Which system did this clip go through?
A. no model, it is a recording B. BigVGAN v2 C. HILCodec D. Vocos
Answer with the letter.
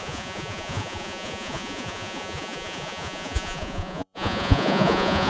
D